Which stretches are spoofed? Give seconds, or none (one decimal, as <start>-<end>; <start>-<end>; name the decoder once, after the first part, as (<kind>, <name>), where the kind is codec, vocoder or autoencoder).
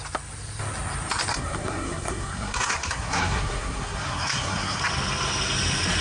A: 1.3-4.8 (codec, SNAC)